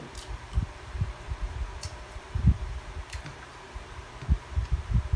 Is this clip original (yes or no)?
no